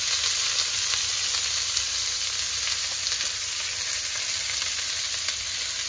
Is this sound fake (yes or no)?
no